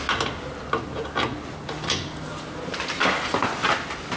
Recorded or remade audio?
recorded